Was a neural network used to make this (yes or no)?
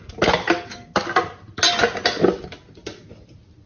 no